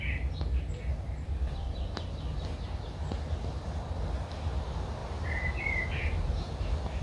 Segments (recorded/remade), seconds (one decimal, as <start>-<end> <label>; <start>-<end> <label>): 0.0-5.0 recorded; 5.0-5.6 remade; 5.6-7.0 recorded